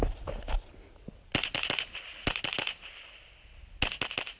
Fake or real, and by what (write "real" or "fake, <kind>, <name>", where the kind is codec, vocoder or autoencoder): real